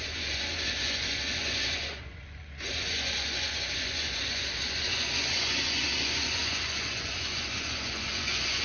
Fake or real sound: fake